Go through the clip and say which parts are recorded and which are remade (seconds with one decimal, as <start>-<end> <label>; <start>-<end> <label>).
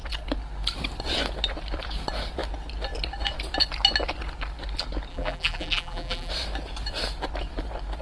0.0-5.1 recorded; 5.1-6.3 remade; 6.3-8.0 recorded